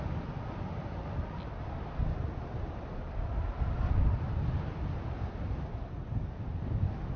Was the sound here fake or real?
real